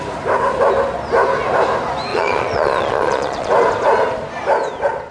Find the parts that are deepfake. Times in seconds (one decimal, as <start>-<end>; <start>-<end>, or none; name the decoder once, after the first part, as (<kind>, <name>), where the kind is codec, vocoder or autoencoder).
2.1-3.5 (vocoder, Vocos)